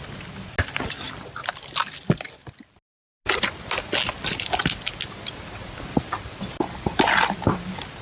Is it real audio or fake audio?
real